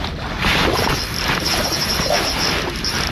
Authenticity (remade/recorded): remade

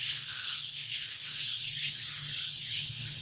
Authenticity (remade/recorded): remade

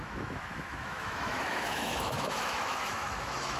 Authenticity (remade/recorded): remade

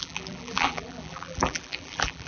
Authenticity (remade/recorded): remade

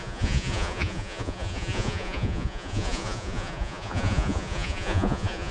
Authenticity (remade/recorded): remade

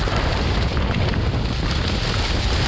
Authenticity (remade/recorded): recorded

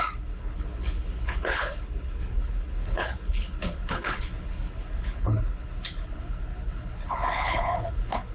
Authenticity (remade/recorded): remade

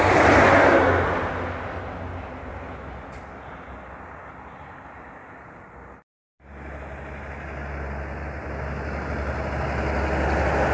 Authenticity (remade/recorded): recorded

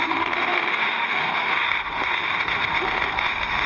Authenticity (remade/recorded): remade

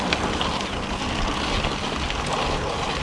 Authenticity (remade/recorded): recorded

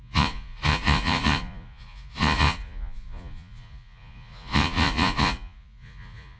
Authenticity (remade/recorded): remade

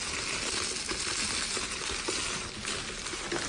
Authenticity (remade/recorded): recorded